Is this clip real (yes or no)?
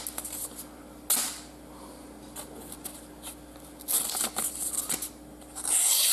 yes